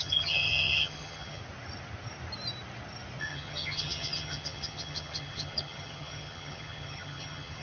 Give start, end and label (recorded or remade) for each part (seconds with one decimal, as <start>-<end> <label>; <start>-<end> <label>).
0.0-1.4 remade; 1.4-3.2 recorded; 3.2-7.6 remade